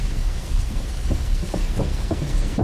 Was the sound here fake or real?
fake